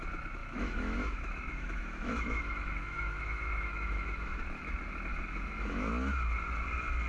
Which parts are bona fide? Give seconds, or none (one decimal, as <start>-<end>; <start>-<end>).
0.0-0.4; 4.4-5.1; 5.9-7.1